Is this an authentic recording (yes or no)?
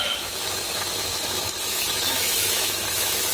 no